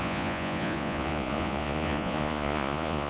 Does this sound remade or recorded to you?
remade